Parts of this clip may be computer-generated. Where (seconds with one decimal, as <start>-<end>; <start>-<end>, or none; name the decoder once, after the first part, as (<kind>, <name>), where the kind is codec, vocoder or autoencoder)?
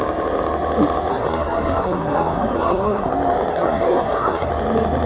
1.1-3.1 (codec, SNAC); 3.5-4.5